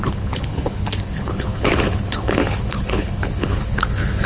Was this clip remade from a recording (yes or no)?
yes